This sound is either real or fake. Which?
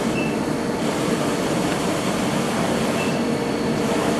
real